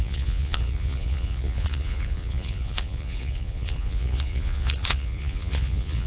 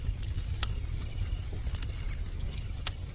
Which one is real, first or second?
second